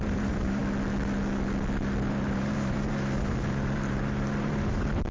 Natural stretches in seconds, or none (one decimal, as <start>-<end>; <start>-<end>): 0.6-2.1

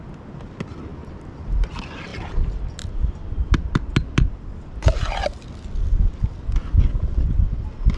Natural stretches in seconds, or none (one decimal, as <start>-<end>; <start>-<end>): 0.0-0.9; 1.7-2.1; 2.7-8.0

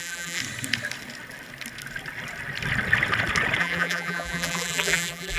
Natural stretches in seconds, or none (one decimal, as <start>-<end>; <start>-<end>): 0.4-3.6

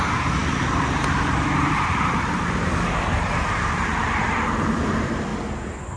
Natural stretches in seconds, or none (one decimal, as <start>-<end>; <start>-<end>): 5.3-6.0

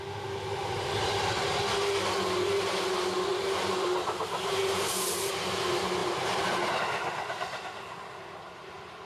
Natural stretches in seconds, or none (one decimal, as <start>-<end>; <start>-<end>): 0.0-3.3; 5.3-6.0; 6.8-9.1

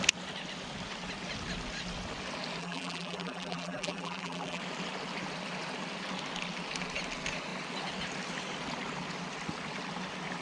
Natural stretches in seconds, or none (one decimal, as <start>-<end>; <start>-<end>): 0.0-2.6; 4.6-10.4